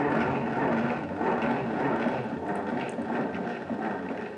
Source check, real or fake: real